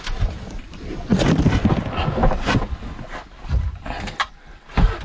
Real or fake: real